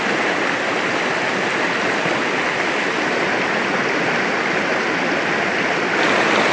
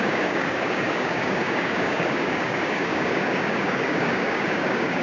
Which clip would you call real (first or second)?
first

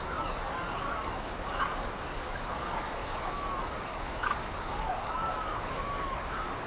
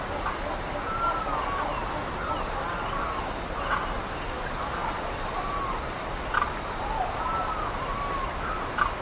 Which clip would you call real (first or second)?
second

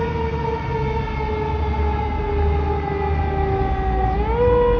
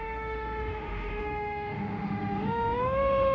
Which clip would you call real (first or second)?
first